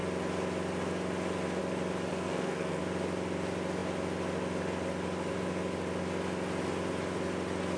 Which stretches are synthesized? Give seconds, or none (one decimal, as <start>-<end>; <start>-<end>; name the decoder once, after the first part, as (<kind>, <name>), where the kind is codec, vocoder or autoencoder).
2.1-2.8 (codec, SNAC)